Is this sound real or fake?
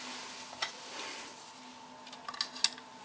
real